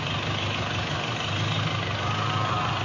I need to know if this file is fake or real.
real